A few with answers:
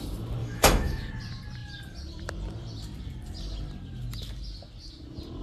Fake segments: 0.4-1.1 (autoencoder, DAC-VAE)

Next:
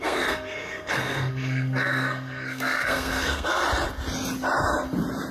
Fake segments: 0.0-3.6 (codec, SNAC)

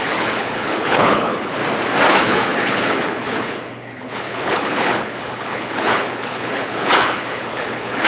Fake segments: 0.0-1.6 (codec, HILCodec); 2.1-8.1

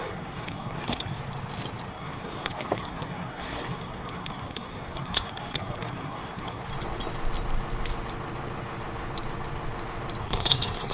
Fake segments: 0.0-1.2 (codec, SNAC); 1.9-6.6; 10.2-10.9

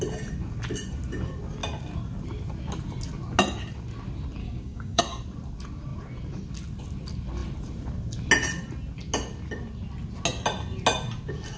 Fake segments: 4.4-5.0 (codec, DAC)